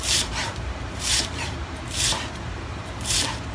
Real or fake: fake